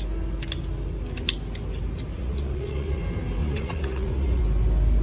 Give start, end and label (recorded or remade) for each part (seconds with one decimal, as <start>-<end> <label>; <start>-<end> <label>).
0.0-2.1 recorded; 2.1-3.0 remade; 3.0-3.4 recorded; 3.4-4.4 remade; 4.4-5.0 recorded